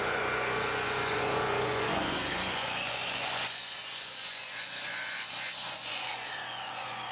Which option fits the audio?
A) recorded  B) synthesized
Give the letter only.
B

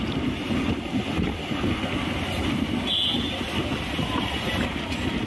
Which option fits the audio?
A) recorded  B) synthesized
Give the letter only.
A